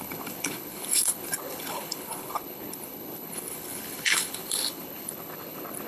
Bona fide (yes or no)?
no